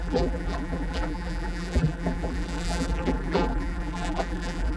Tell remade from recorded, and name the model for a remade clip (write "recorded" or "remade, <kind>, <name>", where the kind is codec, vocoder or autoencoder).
remade, vocoder, BigVGAN v2